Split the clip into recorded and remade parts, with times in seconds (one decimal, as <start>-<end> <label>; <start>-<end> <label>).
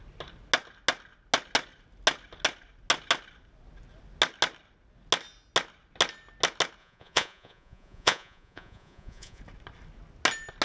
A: 0.0-6.8 recorded; 6.8-9.4 remade; 9.4-10.6 recorded